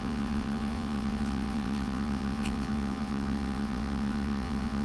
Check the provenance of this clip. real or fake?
fake